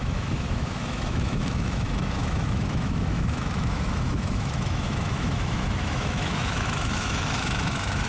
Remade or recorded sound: remade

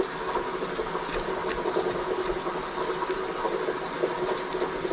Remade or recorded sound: recorded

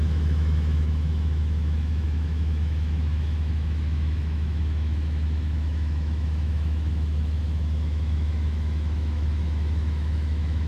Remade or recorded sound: remade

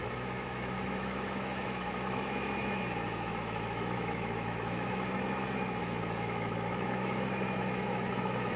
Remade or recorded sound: remade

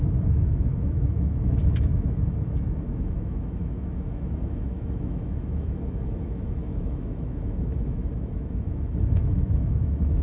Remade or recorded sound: remade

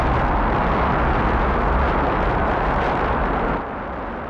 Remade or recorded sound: recorded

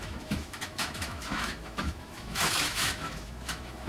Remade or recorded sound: remade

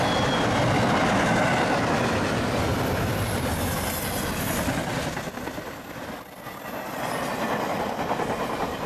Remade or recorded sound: recorded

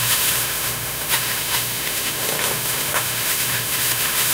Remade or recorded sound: remade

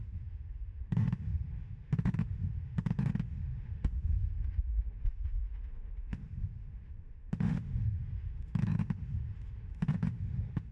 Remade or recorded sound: remade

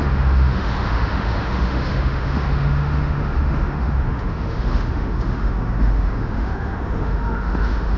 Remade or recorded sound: remade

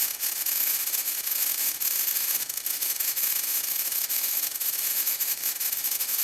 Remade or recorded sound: remade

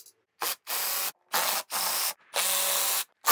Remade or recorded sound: recorded